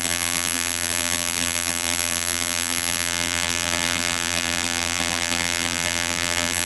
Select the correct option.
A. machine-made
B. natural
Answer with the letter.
A